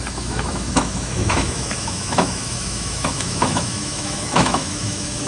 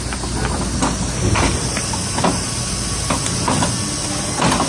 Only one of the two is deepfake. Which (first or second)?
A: first